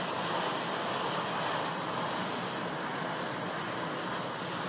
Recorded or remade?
recorded